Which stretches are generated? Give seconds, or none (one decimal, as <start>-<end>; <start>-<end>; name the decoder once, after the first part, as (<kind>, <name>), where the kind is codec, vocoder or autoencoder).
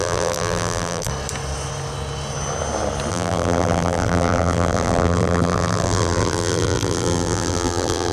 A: 0.0-1.1 (vocoder, BigVGAN v2); 3.1-8.1